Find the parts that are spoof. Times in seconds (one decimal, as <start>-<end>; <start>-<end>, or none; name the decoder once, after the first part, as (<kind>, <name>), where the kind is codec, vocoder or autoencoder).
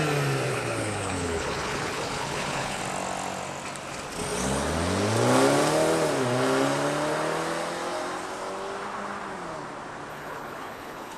0.5-2.8 (codec, HILCodec); 10.1-11.2